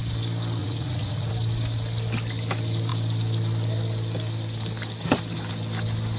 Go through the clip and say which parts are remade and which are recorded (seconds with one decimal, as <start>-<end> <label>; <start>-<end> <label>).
0.0-0.6 recorded; 0.6-1.3 remade; 1.3-6.2 recorded